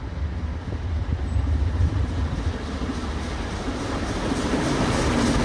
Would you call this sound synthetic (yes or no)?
no